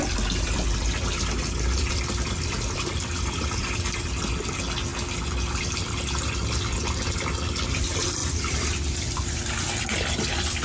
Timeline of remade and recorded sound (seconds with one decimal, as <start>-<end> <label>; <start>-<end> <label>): 0.0-4.3 remade; 4.3-8.2 recorded; 8.2-9.5 remade; 9.5-10.6 recorded